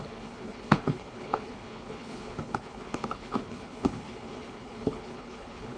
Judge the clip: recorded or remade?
remade